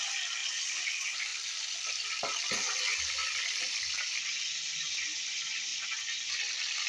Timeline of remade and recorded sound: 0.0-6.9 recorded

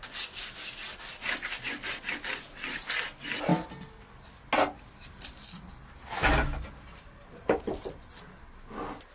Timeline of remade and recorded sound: 0.0-9.1 recorded

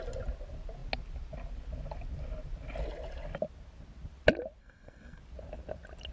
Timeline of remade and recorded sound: 0.0-4.6 recorded; 4.6-5.2 remade; 5.2-6.1 recorded

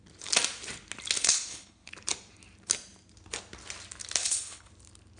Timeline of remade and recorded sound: 0.0-1.2 recorded; 1.2-1.9 remade; 1.9-4.2 recorded; 4.2-4.7 remade; 4.7-5.2 recorded